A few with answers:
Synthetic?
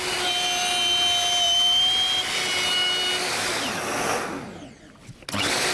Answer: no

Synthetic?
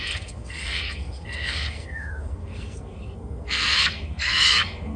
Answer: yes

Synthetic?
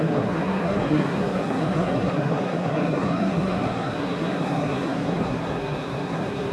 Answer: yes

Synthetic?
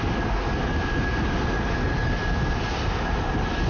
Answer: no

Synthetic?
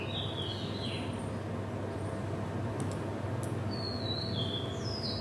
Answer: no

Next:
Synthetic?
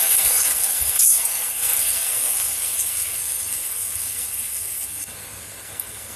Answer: yes